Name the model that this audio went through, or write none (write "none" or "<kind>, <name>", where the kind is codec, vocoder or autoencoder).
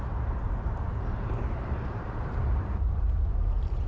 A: vocoder, BigVGAN v2